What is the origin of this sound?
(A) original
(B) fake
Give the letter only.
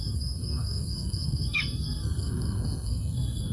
B